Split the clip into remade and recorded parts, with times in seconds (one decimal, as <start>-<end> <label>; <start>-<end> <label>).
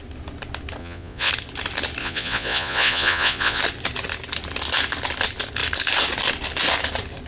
0.0-0.8 recorded; 0.8-1.3 remade; 1.3-2.0 recorded; 2.0-3.6 remade; 3.6-7.3 recorded